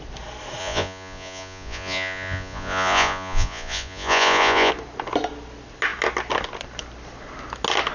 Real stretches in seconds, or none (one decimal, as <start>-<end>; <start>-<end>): 0.0-0.6; 4.7-7.9